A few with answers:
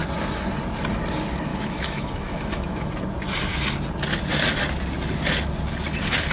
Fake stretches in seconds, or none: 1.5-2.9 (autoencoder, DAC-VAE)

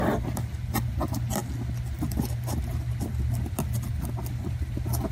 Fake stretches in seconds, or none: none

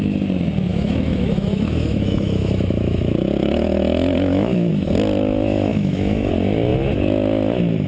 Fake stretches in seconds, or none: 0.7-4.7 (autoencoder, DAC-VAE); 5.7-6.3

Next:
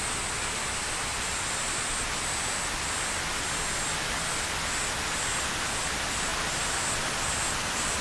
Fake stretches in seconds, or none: none

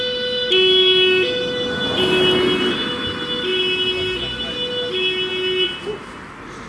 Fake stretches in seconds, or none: none

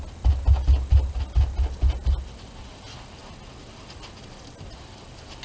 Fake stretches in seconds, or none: none

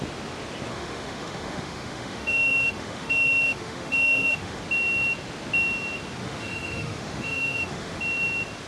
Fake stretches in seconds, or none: 0.7-4.6 (autoencoder, DAC-VAE); 6.2-8.0

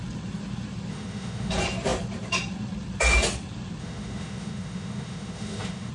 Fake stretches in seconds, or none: 0.9-1.5 (autoencoder, DAC-VAE); 3.8-5.9